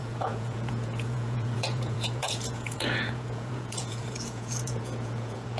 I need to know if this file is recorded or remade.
remade